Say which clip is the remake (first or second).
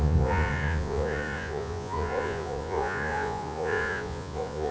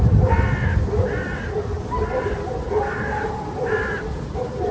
first